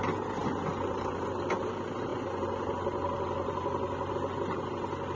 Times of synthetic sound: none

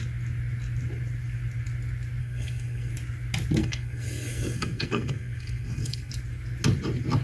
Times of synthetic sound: 2.2-2.9 (codec, SNAC); 3.6-6.1

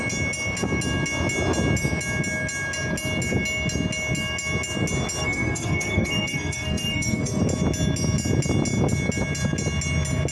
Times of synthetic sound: 5.2-7.4 (codec, SNAC)